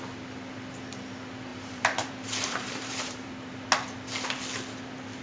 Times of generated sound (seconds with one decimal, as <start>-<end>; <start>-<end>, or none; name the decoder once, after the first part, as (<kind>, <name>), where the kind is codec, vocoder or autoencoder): 1.5-3.3 (vocoder, BigVGAN v2)